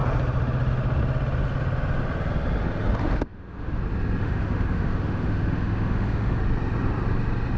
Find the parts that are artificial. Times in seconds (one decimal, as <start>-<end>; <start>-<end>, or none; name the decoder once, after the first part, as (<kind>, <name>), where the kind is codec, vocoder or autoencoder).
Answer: 3.0-3.8 (autoencoder, DAC-VAE); 4.2-6.4